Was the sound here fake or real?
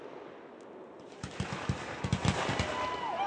real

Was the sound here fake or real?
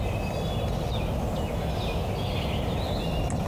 real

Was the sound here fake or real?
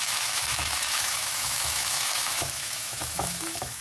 fake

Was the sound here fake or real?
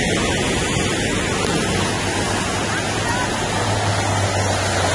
real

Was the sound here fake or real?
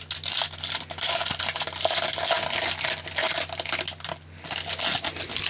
real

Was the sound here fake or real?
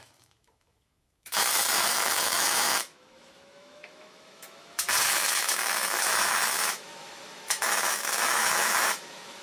fake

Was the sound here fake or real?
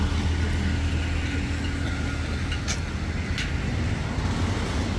real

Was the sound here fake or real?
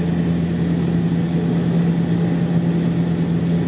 real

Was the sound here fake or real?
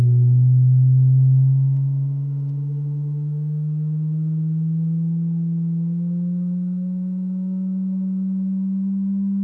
fake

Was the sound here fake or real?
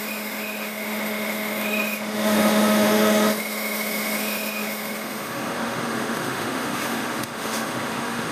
fake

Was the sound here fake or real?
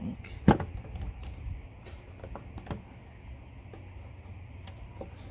real